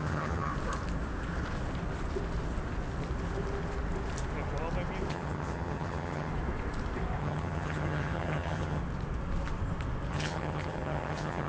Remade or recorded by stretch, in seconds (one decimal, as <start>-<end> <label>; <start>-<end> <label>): 0.0-0.5 remade; 0.5-5.1 recorded; 5.1-6.3 remade; 6.3-7.2 recorded; 7.2-8.8 remade; 8.8-10.1 recorded; 10.1-11.5 remade